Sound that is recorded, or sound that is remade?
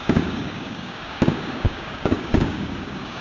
remade